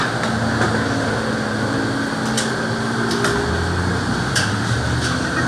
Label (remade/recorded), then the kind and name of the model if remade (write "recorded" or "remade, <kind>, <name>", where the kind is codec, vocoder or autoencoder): recorded